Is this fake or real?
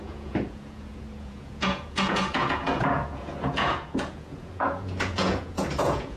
fake